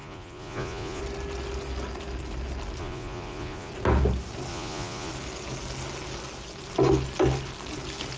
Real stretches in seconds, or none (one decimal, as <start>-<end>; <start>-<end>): 1.0-2.8; 3.7-4.5; 5.1-8.2